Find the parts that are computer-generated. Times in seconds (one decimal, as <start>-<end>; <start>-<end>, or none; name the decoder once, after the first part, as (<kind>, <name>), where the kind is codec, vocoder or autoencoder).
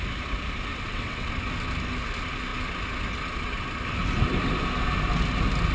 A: 0.7-1.3 (vocoder, WaveNeXt)